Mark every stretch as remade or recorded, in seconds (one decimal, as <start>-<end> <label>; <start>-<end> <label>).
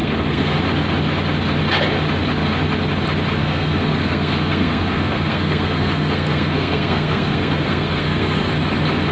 0.0-0.6 remade; 0.6-3.4 recorded; 3.4-8.5 remade; 8.5-9.1 recorded